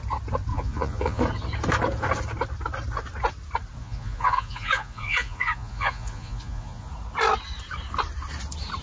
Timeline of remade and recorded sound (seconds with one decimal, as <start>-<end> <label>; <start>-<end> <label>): 0.0-0.5 recorded; 0.5-1.2 remade; 1.2-3.8 recorded; 3.8-6.9 remade; 6.9-8.8 recorded